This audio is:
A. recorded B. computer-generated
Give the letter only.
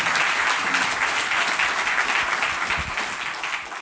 A